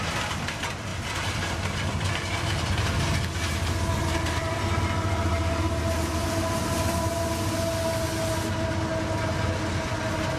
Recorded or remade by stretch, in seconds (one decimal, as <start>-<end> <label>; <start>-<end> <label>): 0.0-10.4 recorded